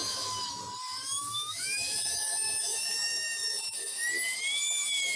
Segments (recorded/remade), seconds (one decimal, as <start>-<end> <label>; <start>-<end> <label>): 0.0-0.6 remade; 0.6-1.0 recorded; 1.0-4.1 remade; 4.1-5.2 recorded

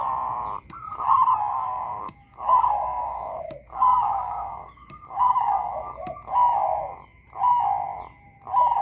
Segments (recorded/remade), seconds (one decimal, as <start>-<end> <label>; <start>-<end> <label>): 0.0-1.4 recorded; 1.4-5.7 remade; 5.7-8.8 recorded

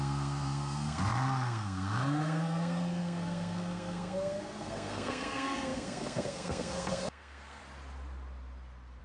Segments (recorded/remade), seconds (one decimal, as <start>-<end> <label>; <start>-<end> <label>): 0.0-7.6 remade; 7.6-9.0 recorded

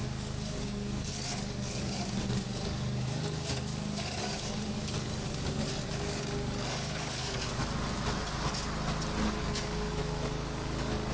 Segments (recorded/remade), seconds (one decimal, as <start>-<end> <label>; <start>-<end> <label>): 0.0-7.6 remade; 7.6-9.4 recorded; 9.4-11.1 remade

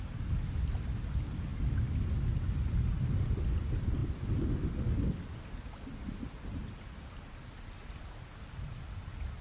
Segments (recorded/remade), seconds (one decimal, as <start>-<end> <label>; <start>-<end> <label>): 0.0-9.4 recorded

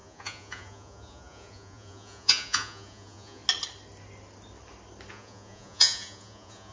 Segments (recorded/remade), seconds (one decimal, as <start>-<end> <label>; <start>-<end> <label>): 0.0-3.4 remade; 3.4-5.1 recorded; 5.1-6.7 remade

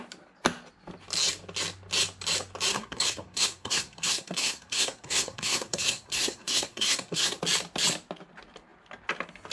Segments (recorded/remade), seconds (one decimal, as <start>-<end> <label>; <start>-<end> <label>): 0.0-2.7 recorded; 2.7-7.4 remade; 7.4-9.5 recorded

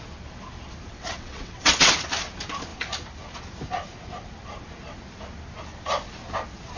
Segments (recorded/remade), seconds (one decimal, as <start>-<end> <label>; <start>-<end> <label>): 0.0-0.9 recorded; 0.9-1.9 remade; 1.9-6.8 recorded